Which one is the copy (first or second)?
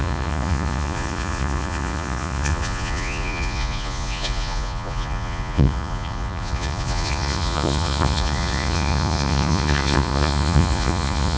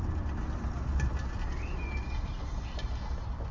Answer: first